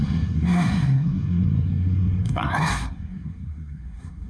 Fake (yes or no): yes